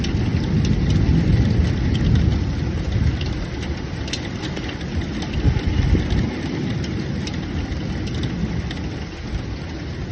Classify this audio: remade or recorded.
recorded